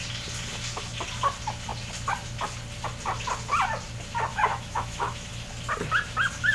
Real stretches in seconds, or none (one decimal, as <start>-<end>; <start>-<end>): 0.0-4.3; 5.3-6.5